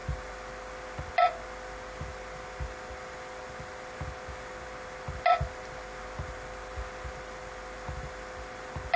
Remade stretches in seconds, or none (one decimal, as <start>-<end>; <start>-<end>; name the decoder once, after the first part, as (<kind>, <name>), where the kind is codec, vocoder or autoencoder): none

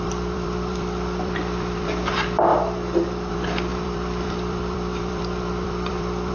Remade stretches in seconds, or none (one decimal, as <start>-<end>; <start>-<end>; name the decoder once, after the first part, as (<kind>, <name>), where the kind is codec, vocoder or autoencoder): 0.0-2.5 (vocoder, BigVGAN v2); 3.3-6.3

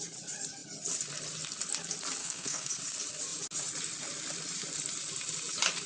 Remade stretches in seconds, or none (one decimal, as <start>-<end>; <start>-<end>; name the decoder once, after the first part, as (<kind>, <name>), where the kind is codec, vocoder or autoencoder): 2.2-2.7 (codec, SNAC)

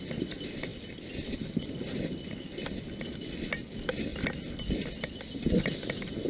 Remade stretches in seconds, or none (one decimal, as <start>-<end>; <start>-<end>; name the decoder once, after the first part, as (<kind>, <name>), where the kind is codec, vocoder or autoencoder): 0.7-1.7 (vocoder, BigVGAN v2)

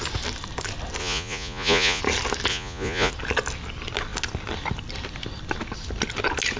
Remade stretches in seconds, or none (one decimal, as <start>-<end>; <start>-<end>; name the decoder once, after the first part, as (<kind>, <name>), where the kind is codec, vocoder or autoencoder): 1.0-2.0 (vocoder, Vocos); 2.5-3.1

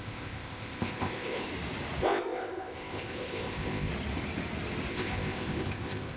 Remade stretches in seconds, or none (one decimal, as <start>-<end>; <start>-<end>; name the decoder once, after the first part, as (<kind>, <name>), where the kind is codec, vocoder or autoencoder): 0.0-1.5 (codec, ZipCodec); 2.0-3.9; 4.9-6.2